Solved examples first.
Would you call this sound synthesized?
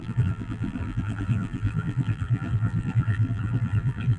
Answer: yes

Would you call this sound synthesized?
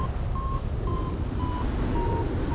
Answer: no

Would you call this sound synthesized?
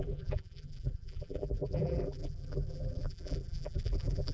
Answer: yes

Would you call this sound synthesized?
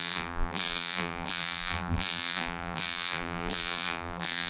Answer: yes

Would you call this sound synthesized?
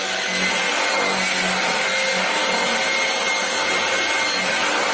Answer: no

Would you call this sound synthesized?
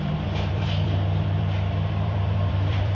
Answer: yes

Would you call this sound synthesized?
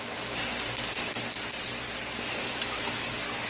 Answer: no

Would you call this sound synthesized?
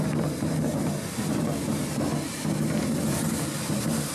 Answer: no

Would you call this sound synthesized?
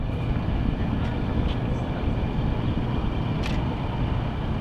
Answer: no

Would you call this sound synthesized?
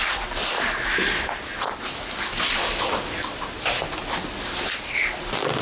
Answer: no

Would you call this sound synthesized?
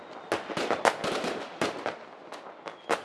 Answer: no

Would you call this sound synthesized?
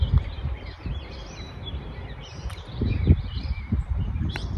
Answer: yes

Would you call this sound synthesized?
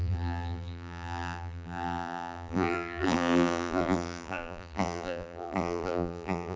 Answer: yes